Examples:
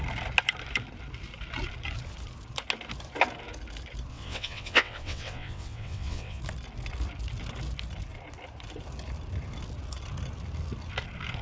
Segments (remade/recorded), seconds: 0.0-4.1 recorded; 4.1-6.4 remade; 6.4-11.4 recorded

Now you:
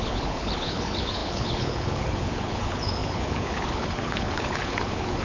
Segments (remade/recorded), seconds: 0.0-5.2 remade

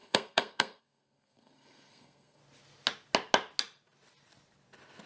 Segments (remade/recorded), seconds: 0.0-2.4 remade; 2.4-5.1 recorded

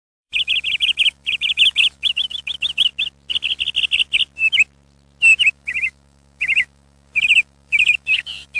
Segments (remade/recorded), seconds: 0.0-2.9 remade; 2.9-5.5 recorded; 5.5-8.6 remade

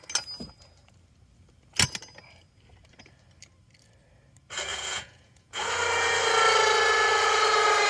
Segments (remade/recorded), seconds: 0.0-4.7 recorded; 4.7-5.6 remade; 5.6-7.9 recorded

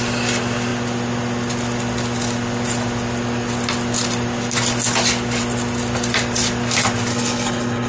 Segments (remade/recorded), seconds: 0.0-7.1 recorded; 7.1-7.9 remade

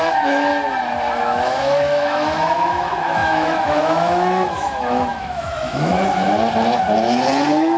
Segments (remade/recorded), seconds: 0.0-0.5 remade; 0.5-1.2 recorded; 1.2-5.9 remade; 5.9-7.8 recorded

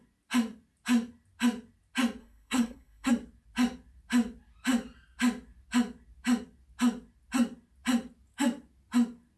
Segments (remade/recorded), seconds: 0.0-2.2 recorded; 2.2-3.1 remade; 3.1-9.4 recorded